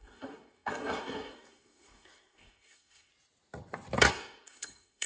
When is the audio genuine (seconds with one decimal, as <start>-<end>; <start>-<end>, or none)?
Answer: 3.1-4.1